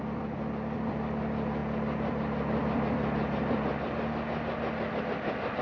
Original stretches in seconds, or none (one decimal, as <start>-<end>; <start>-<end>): 0.0-5.6